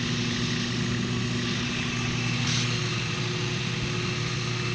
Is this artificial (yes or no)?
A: no